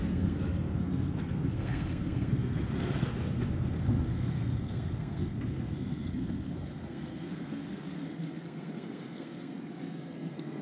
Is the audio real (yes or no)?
no